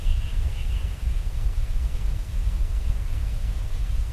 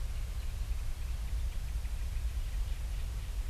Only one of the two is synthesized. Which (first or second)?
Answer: first